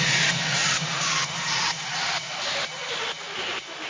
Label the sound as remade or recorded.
recorded